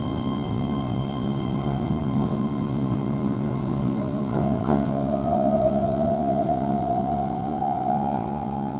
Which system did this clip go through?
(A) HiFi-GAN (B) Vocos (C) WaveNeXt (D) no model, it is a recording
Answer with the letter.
C